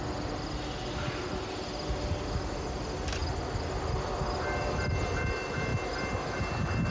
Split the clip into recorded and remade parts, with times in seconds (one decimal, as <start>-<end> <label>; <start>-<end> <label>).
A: 0.0-6.9 recorded